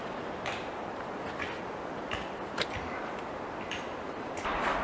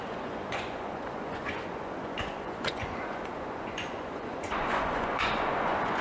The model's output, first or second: second